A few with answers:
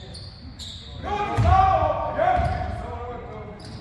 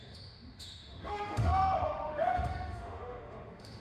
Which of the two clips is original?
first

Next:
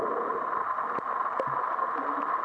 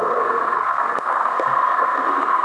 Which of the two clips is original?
first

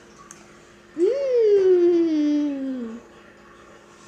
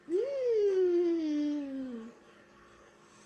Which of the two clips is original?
first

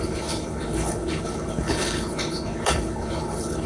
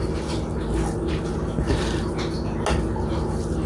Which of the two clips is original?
second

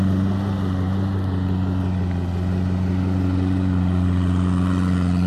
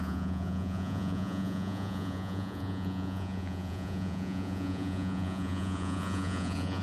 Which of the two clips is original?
first